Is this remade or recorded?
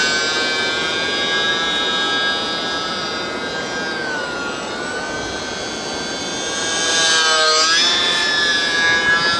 recorded